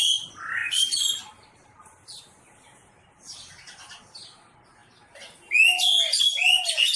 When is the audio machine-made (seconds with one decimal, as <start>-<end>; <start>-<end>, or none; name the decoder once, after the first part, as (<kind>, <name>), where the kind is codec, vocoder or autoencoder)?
none